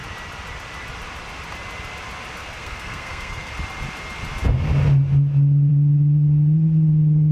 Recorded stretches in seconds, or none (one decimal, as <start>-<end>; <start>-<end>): 0.0-2.4; 3.5-7.3